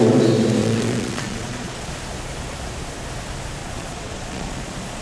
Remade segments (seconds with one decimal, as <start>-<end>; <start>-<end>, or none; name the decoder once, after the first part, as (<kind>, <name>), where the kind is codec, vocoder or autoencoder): 0.6-1.9 (vocoder, Vocos); 3.6-5.0